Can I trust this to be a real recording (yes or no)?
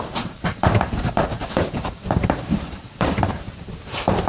no